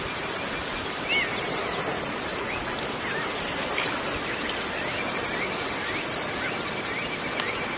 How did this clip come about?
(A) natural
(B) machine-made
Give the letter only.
A